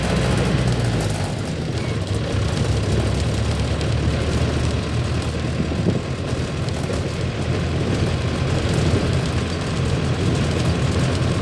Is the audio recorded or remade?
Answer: recorded